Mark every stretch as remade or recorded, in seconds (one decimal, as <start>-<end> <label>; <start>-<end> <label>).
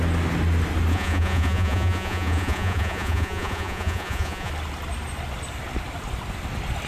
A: 0.0-0.9 recorded; 0.9-4.5 remade; 4.5-6.9 recorded